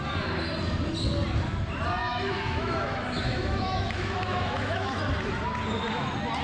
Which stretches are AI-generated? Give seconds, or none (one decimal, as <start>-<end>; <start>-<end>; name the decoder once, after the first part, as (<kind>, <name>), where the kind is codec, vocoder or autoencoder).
2.0-5.0 (autoencoder, DAC-VAE)